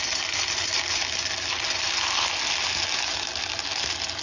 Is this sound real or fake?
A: real